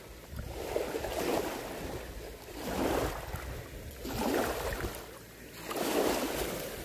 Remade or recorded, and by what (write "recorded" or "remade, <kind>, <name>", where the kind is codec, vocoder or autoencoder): recorded